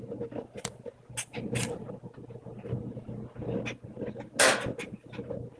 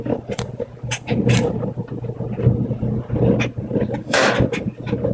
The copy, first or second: second